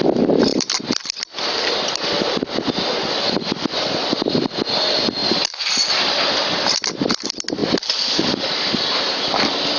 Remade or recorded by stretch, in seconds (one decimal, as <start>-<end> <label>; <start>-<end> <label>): 0.0-9.8 recorded